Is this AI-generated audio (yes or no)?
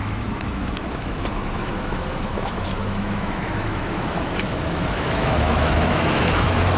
yes